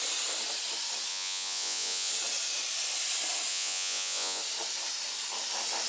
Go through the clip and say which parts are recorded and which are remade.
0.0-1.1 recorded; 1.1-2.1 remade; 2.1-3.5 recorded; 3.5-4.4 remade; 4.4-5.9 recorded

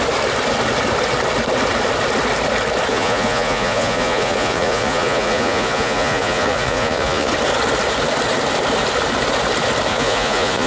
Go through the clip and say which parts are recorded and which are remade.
0.0-2.9 recorded; 2.9-7.3 remade; 7.3-9.9 recorded; 9.9-10.7 remade

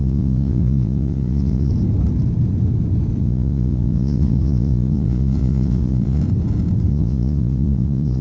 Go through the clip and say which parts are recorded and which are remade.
0.0-1.7 remade; 1.7-3.2 recorded; 3.2-6.2 remade; 6.2-6.9 recorded; 6.9-8.2 remade

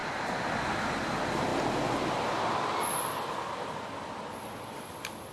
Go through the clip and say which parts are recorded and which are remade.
0.0-5.3 recorded

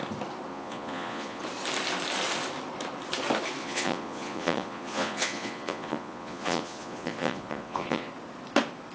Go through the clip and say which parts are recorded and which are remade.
0.0-0.5 recorded; 0.5-1.4 remade; 1.4-3.6 recorded; 3.6-8.1 remade; 8.1-8.9 recorded

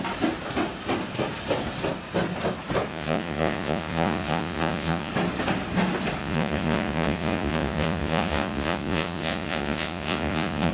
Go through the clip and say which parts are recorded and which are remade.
0.0-2.9 recorded; 2.9-5.1 remade; 5.1-6.2 recorded; 6.2-10.7 remade